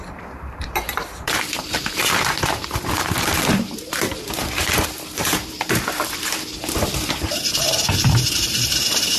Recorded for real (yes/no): no